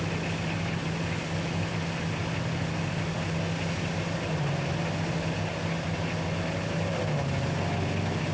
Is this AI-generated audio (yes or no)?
no